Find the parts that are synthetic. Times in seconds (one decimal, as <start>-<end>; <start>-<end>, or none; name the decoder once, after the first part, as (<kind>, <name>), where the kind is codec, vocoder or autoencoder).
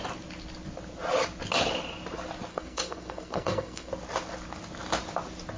2.5-3.9 (codec, SNAC)